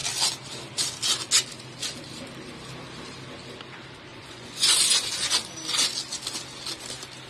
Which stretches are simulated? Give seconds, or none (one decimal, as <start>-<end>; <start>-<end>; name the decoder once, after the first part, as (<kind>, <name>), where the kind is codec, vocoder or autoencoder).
4.1-4.8 (vocoder, Vocos)